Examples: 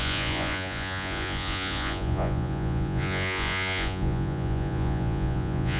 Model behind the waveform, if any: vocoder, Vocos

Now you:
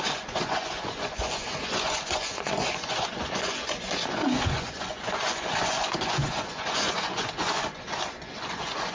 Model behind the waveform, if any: vocoder, Vocos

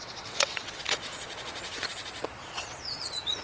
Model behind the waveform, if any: vocoder, Vocos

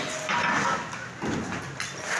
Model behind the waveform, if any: none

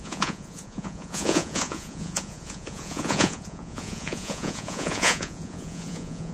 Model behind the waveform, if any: vocoder, Vocos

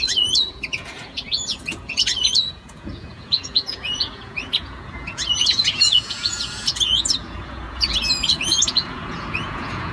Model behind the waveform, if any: vocoder, Vocos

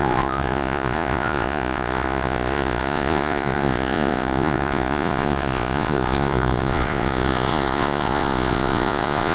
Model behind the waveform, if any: vocoder, Vocos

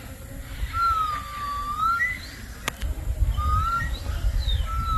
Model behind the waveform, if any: none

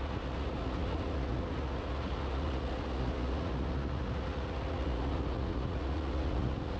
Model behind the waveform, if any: vocoder, Vocos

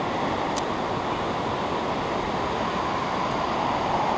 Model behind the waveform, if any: none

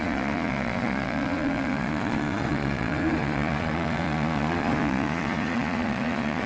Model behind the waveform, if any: vocoder, Vocos